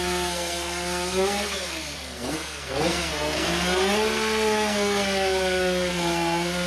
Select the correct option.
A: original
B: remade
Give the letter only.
B